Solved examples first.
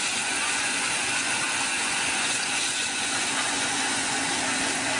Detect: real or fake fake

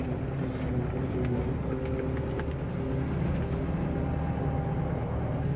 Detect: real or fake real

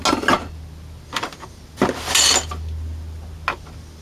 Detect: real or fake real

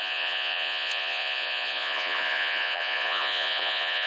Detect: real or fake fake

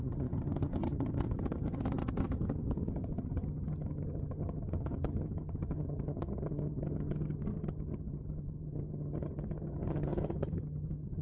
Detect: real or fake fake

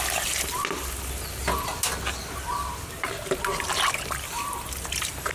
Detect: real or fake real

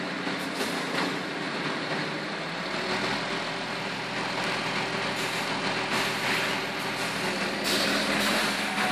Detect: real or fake real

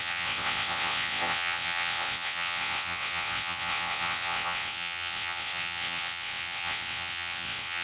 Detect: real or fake fake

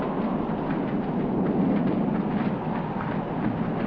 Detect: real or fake real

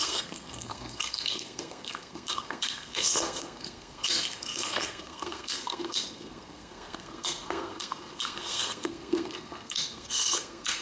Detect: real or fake fake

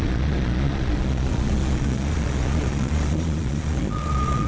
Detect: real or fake fake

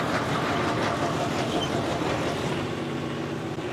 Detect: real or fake fake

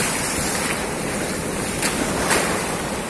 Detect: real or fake real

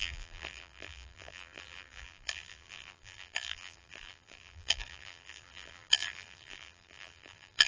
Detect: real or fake fake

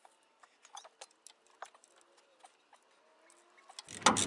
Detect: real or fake real